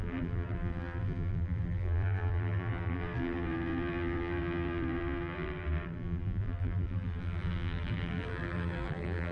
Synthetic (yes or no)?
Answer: yes